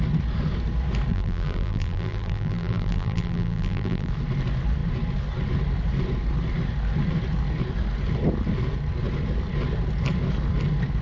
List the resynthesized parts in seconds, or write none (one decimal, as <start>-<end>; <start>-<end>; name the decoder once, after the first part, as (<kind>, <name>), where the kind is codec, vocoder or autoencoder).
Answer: 1.1-4.1 (vocoder, BigVGAN v2)